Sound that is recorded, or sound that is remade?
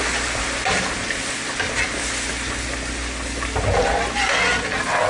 recorded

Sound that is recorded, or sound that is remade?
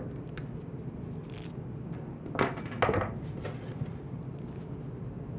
recorded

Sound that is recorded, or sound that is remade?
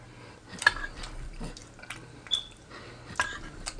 recorded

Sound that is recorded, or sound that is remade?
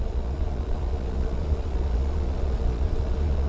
remade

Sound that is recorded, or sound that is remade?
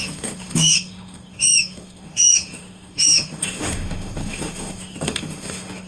remade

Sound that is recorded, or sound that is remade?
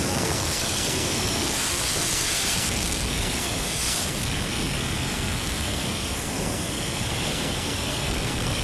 remade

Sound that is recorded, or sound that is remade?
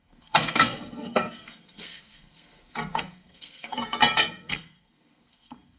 remade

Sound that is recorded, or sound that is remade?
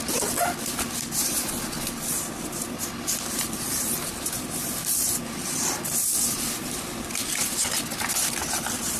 recorded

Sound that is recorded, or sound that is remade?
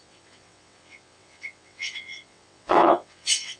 remade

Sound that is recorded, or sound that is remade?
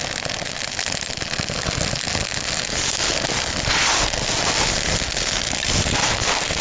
recorded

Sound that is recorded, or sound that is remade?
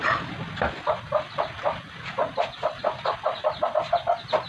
recorded